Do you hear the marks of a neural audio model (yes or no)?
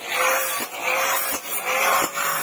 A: yes